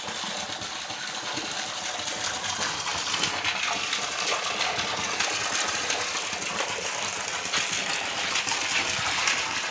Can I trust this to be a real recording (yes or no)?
yes